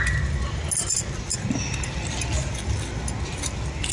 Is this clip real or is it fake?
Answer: real